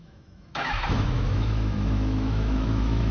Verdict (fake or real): fake